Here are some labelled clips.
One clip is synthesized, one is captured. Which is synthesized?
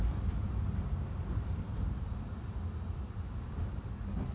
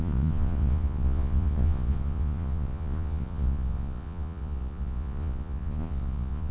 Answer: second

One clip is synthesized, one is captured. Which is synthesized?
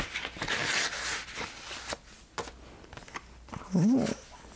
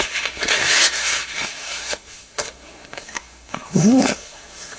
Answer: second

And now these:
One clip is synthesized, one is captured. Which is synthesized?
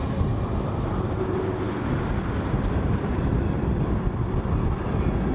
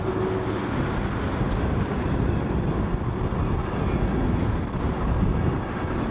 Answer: first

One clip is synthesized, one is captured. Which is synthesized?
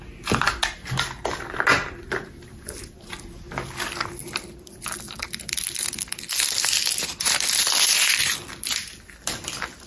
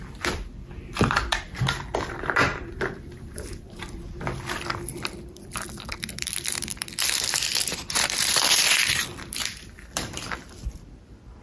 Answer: second